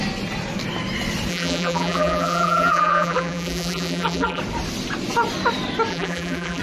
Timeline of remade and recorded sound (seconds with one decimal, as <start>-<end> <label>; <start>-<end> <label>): 0.0-1.3 recorded; 1.3-4.4 remade; 4.4-5.9 recorded; 5.9-6.6 remade